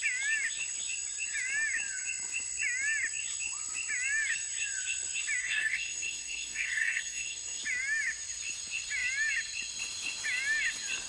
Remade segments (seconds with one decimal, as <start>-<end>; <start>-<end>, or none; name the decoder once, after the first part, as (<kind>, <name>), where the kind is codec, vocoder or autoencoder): 5.4-7.6 (codec, SNAC)